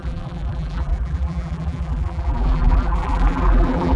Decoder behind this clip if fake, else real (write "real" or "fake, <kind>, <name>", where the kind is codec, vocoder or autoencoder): fake, vocoder, BigVGAN v2